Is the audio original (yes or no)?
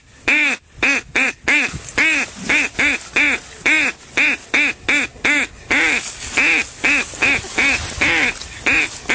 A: yes